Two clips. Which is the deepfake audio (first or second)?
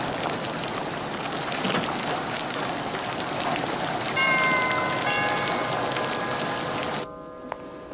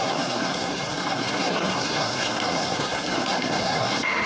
second